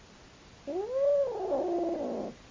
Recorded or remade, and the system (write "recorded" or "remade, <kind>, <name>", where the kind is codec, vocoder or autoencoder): recorded